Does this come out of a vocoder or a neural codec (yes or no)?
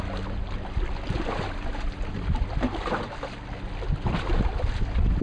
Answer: no